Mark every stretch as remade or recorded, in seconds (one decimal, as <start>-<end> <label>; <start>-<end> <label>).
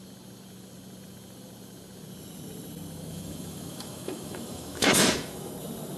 0.0-3.1 recorded; 3.1-5.5 remade; 5.5-6.0 recorded